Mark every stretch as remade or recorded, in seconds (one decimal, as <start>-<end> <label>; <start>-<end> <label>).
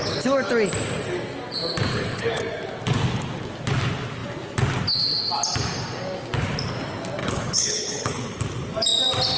0.0-1.9 recorded; 1.9-2.4 remade; 2.4-7.2 recorded; 7.2-8.3 remade; 8.3-9.4 recorded